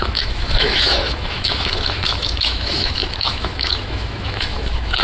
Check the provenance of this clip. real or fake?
fake